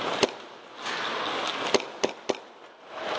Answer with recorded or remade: recorded